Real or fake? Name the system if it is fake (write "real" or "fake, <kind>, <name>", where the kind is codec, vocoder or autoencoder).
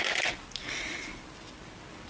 real